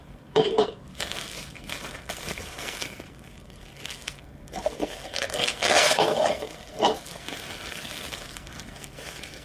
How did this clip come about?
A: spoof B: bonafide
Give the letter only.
A